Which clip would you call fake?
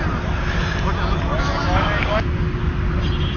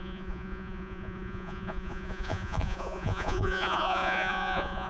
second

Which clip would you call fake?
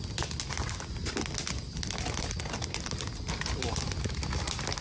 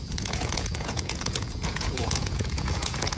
second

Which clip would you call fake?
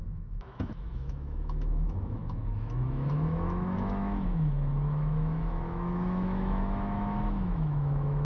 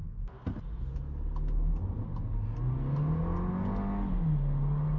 first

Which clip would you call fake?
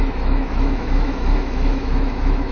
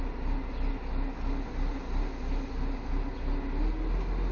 first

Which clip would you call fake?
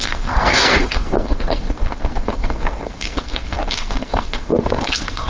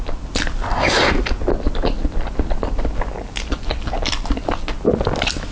first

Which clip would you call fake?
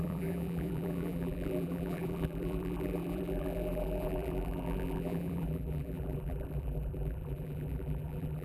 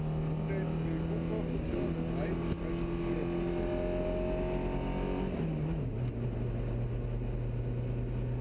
first